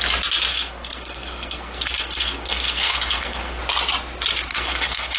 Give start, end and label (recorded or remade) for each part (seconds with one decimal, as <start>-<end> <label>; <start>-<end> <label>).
0.0-0.5 recorded; 0.5-3.6 remade; 3.6-4.5 recorded; 4.5-5.2 remade

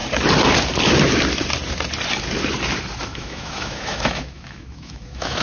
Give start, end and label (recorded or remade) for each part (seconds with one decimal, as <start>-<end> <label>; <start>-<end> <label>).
0.0-3.1 recorded; 3.1-5.4 remade

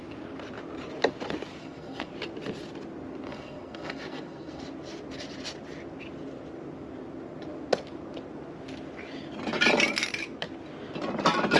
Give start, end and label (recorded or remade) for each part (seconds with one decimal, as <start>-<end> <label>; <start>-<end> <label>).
0.0-1.6 recorded; 1.6-2.1 remade; 2.1-3.3 recorded; 3.3-4.6 remade; 4.6-11.6 recorded